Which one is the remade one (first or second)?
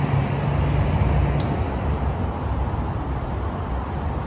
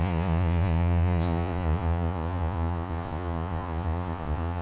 second